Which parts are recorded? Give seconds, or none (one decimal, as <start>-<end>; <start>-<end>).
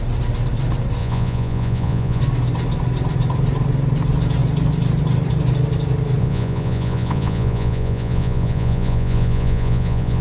0.0-1.0; 2.2-6.2